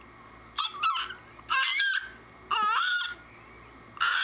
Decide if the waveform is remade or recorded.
recorded